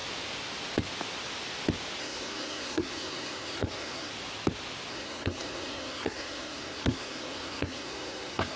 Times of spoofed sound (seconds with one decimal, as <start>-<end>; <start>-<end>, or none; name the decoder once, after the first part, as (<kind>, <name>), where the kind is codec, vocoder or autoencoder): 2.0-4.1 (codec, SNAC); 4.9-8.6

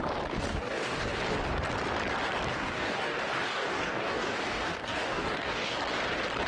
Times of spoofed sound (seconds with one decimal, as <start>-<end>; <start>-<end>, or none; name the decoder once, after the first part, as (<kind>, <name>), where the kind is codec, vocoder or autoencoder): 0.5-1.2 (codec, DAC); 2.5-5.8

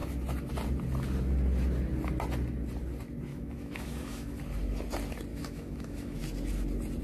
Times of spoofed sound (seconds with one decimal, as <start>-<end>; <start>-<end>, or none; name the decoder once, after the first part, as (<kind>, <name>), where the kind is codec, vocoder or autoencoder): 3.3-4.4 (autoencoder, DAC-VAE); 5.3-6.2

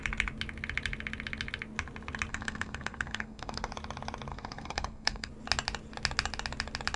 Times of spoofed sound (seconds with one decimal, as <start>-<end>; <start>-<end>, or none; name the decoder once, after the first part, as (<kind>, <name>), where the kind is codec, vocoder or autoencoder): 2.3-3.7 (codec, SNAC); 4.3-5.3

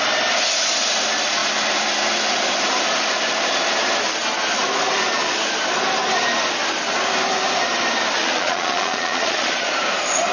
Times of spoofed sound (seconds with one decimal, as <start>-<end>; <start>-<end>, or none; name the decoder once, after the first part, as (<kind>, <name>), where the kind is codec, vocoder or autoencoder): 8.2-9.7 (vocoder, Vocos)